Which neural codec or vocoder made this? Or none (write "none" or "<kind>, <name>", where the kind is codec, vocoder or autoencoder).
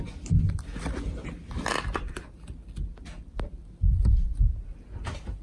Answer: none